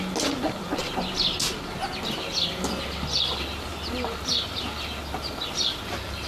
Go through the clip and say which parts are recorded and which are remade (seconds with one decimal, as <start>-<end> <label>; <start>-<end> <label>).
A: 0.0-6.3 recorded